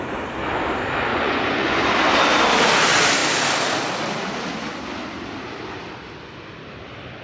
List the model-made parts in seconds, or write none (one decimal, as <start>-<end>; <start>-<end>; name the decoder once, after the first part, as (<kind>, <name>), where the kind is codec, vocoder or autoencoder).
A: 1.1-1.8 (vocoder, Vocos)